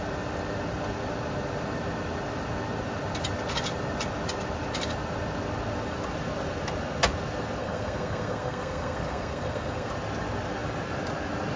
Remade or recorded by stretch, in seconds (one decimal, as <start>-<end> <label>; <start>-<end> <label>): 0.0-7.6 recorded; 7.6-9.9 remade; 9.9-11.6 recorded